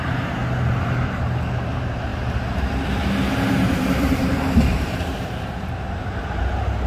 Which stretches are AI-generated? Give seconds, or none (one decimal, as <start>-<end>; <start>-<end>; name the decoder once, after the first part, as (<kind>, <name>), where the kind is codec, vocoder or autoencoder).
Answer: 0.0-0.4 (vocoder, BigVGAN v2); 1.7-2.1; 2.9-6.9